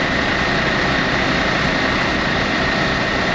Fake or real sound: real